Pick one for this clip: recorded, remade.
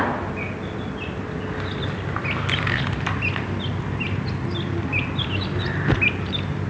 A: recorded